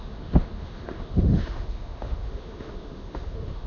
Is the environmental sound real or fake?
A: fake